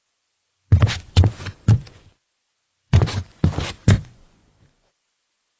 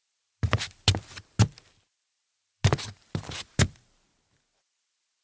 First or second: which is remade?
first